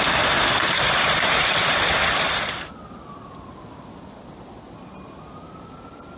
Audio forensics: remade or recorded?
recorded